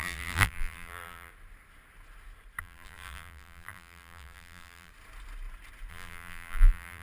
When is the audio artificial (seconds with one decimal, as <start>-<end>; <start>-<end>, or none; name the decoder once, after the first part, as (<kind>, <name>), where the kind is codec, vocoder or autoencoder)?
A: 0.0-1.3 (vocoder, BigVGAN v2); 2.6-4.9; 5.9-7.0